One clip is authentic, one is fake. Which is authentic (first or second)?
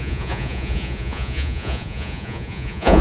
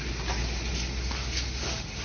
second